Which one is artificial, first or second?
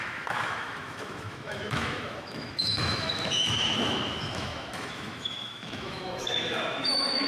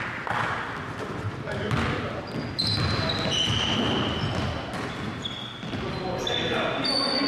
first